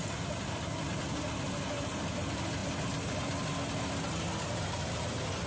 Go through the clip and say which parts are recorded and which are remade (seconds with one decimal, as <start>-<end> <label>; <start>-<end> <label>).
0.0-5.5 recorded